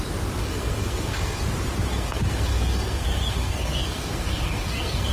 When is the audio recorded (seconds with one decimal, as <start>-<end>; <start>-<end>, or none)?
0.0-0.4; 1.4-1.9